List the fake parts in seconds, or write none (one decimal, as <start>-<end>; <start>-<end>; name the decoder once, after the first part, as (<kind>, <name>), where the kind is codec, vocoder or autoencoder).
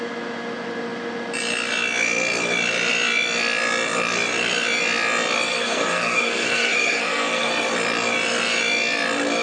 5.5-7.5 (codec, SNAC)